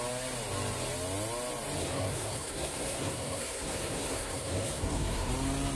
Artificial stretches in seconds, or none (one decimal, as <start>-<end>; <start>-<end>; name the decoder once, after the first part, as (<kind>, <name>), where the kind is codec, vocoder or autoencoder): 1.8-5.3 (codec, SNAC)

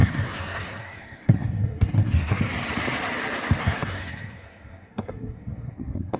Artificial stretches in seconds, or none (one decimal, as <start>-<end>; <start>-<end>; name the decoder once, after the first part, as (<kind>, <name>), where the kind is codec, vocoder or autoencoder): 0.0-2.4 (codec, SNAC); 3.6-6.2

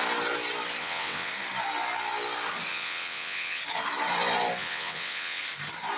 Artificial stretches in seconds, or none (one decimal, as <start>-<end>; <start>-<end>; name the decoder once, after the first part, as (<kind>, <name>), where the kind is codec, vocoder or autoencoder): 0.8-1.3 (vocoder, WaveNeXt); 2.7-3.6; 4.6-5.4